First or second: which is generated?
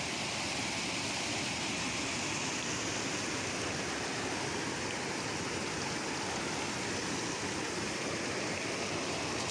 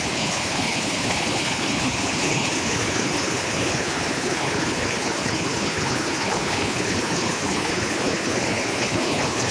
second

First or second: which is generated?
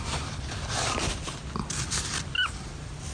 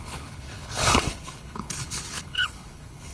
second